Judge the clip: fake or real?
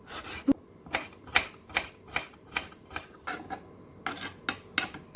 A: real